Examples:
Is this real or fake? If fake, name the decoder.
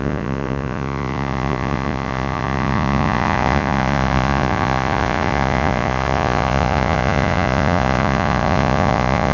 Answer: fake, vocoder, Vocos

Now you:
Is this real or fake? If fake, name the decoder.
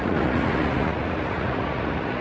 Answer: fake, vocoder, Vocos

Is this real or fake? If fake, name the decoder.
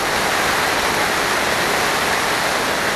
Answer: real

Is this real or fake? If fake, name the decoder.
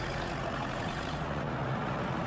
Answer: fake, vocoder, Vocos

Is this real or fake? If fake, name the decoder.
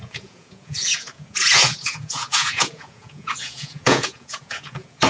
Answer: fake, vocoder, Vocos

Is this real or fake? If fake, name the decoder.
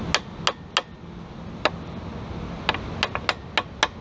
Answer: real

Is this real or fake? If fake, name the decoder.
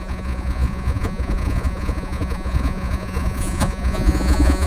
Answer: fake, vocoder, Vocos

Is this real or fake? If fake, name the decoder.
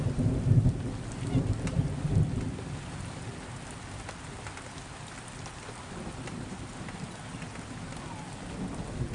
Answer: real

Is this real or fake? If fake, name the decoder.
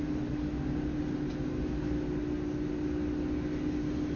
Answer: real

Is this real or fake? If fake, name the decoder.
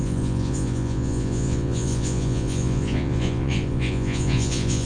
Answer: fake, vocoder, Vocos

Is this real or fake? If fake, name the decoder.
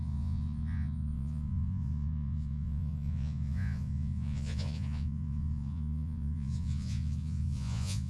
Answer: fake, vocoder, Vocos